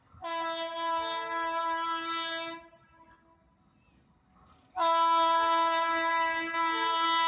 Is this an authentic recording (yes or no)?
yes